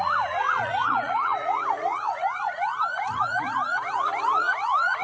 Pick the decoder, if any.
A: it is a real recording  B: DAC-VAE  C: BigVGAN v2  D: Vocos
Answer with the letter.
D